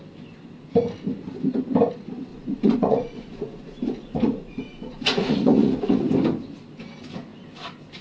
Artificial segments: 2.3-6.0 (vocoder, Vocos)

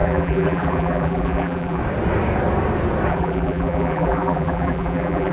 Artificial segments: 0.0-1.8 (vocoder, BigVGAN v2); 3.1-5.3

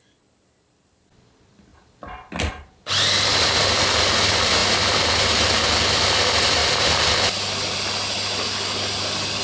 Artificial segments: none

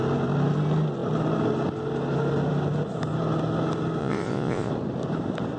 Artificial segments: 4.0-4.7 (vocoder, Vocos)

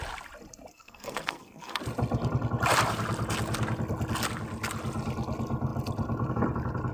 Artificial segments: 0.7-1.8 (codec, SNAC)

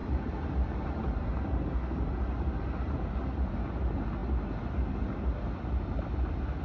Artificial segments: 0.0-3.5 (vocoder, BigVGAN v2)